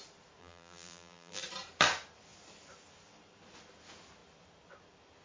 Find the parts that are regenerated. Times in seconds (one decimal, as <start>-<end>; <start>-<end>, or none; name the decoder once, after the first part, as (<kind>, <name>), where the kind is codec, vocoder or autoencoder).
0.4-1.4 (vocoder, BigVGAN v2)